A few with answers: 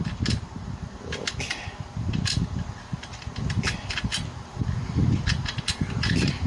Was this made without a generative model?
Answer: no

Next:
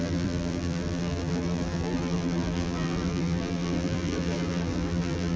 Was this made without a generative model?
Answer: no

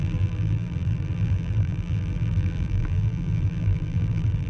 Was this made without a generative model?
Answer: no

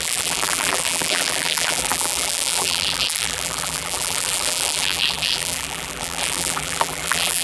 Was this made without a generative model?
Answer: no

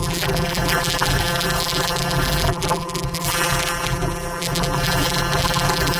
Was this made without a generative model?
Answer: no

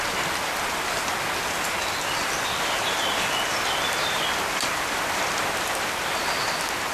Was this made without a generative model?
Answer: yes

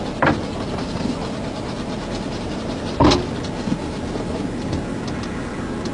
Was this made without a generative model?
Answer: yes